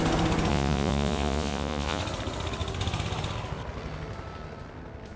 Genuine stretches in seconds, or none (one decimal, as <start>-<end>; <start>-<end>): 0.0-0.5; 2.0-5.2